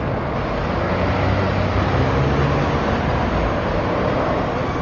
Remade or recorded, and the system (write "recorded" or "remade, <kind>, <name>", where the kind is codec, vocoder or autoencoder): recorded